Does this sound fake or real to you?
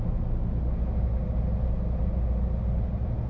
real